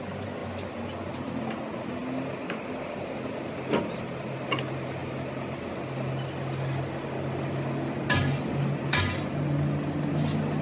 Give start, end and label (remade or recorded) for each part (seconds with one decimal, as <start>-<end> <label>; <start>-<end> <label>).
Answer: 0.0-10.6 recorded